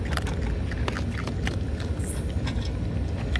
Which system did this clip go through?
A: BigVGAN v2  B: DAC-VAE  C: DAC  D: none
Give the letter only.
D